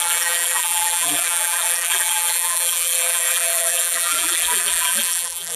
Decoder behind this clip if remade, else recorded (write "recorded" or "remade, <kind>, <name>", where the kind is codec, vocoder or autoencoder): remade, vocoder, BigVGAN v2